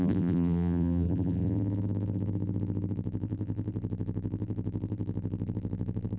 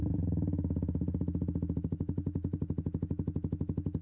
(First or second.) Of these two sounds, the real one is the second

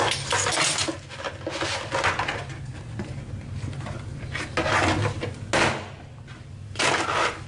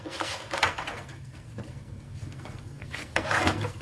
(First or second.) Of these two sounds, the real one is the first